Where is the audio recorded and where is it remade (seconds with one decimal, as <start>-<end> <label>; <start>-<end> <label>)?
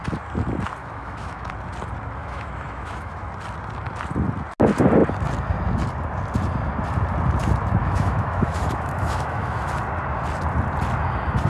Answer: 0.0-0.8 recorded; 0.8-1.5 remade; 1.5-2.2 recorded; 2.2-3.3 remade; 3.3-7.8 recorded; 7.8-9.7 remade; 9.7-11.5 recorded